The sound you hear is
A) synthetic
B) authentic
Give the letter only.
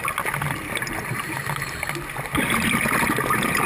B